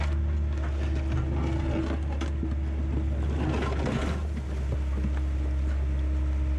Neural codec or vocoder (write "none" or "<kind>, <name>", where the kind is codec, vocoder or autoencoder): none